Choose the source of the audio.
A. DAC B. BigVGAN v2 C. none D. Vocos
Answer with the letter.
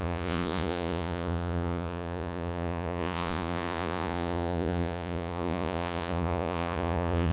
D